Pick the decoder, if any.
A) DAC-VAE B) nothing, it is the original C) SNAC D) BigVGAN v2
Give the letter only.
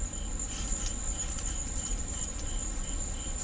B